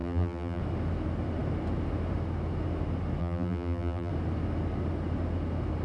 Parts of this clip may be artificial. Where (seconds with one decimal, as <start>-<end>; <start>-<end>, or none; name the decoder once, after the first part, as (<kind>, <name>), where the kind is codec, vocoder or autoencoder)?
0.0-0.6 (vocoder, BigVGAN v2); 3.2-4.1